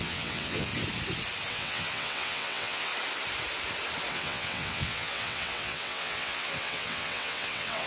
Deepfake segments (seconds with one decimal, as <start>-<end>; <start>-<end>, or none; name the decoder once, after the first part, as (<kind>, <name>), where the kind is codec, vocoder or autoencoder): 0.0-0.7 (vocoder, WaveNeXt); 1.5-2.9; 4.1-7.9